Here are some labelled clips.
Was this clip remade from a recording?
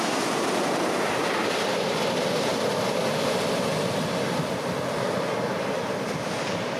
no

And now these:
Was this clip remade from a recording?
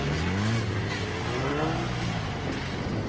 no